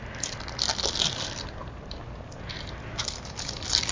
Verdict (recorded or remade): recorded